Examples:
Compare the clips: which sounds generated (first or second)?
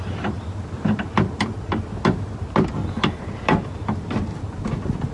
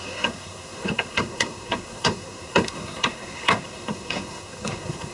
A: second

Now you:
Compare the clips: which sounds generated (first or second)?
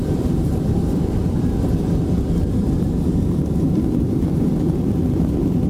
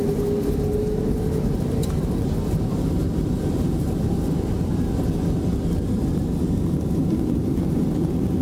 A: first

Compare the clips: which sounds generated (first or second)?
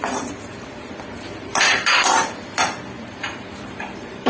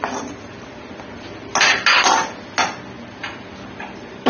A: first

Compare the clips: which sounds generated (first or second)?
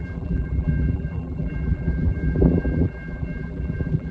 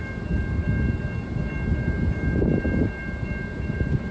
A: first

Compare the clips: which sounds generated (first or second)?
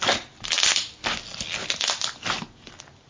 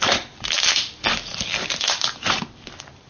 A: second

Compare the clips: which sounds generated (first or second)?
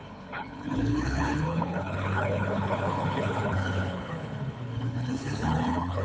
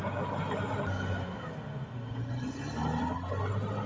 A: first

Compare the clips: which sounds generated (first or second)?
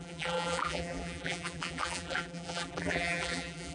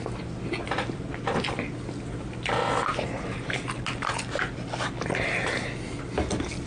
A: first